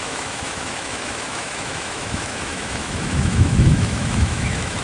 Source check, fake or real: fake